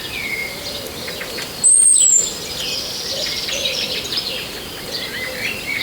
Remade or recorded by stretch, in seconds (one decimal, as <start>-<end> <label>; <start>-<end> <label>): 0.0-5.8 remade